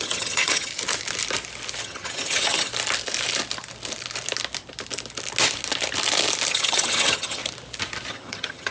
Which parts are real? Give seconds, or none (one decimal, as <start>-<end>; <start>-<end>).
0.7-1.8; 2.7-6.5; 7.4-8.1